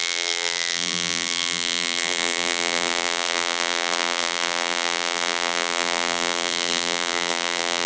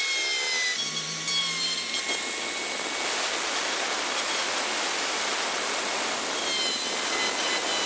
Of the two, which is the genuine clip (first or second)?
second